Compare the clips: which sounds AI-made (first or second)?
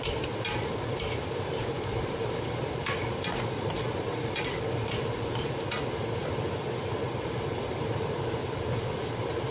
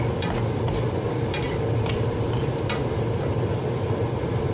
first